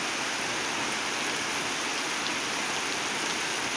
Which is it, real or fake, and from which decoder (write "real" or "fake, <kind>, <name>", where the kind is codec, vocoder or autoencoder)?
real